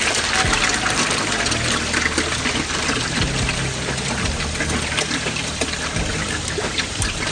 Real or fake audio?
real